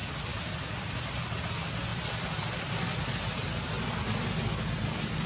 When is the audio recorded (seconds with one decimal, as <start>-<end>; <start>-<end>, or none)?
0.0-5.3